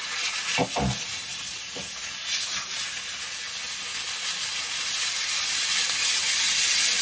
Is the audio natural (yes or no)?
yes